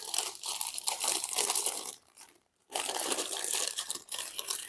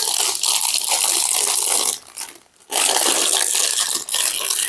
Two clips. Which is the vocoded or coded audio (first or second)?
first